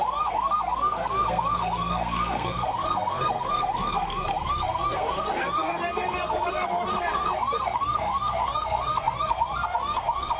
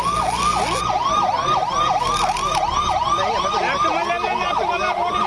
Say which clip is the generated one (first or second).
first